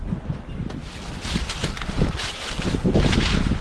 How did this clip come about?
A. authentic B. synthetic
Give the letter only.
A